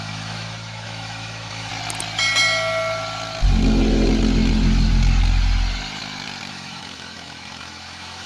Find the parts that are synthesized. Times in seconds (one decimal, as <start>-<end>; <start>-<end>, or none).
0.0-1.7; 6.5-8.3